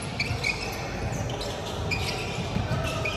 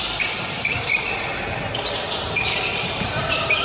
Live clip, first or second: first